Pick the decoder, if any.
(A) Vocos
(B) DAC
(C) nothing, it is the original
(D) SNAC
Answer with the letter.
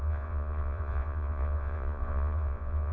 A